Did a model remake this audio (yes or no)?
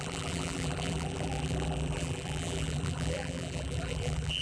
yes